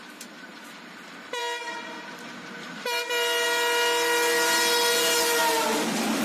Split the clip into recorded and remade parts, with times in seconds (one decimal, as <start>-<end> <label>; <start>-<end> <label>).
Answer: 0.0-6.2 recorded